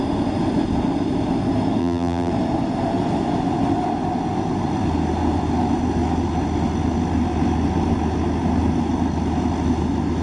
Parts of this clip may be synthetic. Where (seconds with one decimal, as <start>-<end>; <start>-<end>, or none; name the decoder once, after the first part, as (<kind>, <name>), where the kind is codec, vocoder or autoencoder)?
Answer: 1.8-2.3 (vocoder, BigVGAN v2)